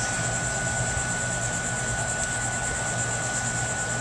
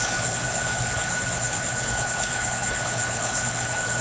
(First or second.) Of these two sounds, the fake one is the second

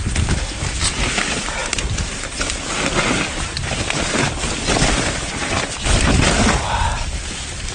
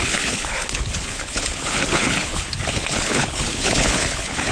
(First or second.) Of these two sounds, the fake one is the second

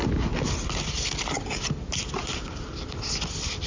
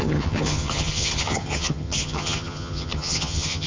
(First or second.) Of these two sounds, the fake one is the second